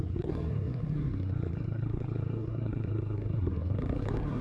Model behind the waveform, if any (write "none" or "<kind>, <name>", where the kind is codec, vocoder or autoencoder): codec, SNAC